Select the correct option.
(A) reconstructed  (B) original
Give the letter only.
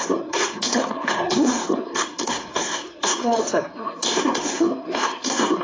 A